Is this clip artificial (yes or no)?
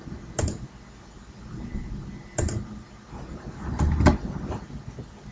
no